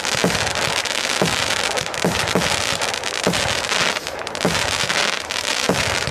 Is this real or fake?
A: real